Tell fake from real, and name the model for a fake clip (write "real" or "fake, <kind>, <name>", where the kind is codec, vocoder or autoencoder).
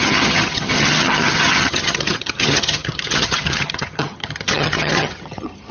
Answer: fake, vocoder, HiFi-GAN